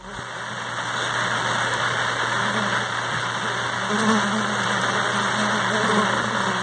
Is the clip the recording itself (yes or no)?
yes